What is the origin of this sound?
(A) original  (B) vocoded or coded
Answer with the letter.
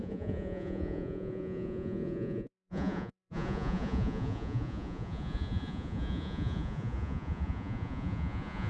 B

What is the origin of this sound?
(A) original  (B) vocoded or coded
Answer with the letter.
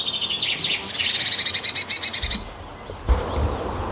A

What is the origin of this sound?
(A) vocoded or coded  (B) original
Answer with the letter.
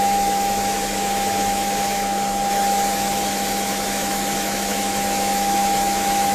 A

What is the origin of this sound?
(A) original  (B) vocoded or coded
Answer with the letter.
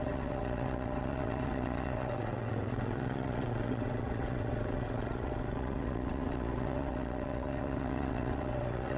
B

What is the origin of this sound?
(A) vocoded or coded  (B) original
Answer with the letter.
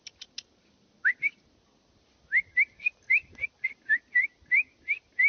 B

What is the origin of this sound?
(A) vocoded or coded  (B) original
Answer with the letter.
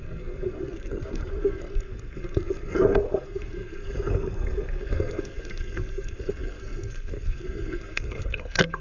A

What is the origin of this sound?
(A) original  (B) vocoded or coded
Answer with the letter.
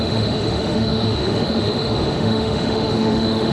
B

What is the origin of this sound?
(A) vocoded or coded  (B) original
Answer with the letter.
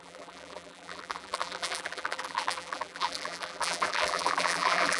A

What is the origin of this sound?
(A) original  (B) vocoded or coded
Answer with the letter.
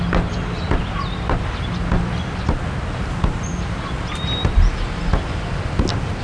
A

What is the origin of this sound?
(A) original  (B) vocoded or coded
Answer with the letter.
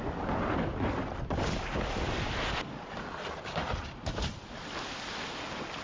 A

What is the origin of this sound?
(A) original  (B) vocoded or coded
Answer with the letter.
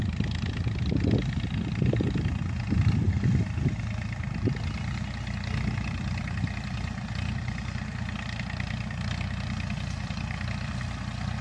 A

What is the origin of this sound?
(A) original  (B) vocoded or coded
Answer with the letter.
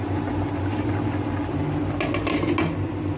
A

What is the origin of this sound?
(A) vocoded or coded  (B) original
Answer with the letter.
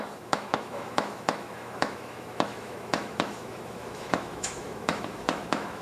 A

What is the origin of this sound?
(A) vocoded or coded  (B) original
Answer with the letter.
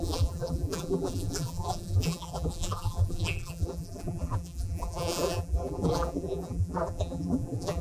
A